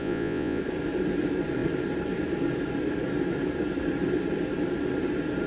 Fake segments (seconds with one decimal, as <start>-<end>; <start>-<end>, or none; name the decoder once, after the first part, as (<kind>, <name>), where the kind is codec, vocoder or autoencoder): 0.0-0.6 (vocoder, Vocos)